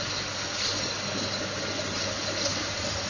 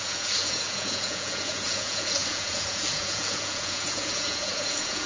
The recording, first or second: first